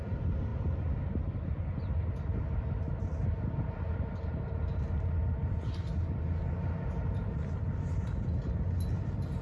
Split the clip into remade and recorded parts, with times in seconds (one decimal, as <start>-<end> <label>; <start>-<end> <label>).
0.0-9.4 recorded